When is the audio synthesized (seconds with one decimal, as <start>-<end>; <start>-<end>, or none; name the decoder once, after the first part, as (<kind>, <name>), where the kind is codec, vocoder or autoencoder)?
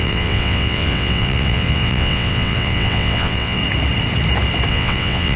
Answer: 0.0-3.6 (vocoder, WaveNeXt); 4.7-5.4